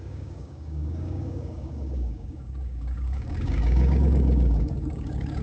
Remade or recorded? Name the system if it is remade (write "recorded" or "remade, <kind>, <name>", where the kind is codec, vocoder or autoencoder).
remade, codec, DAC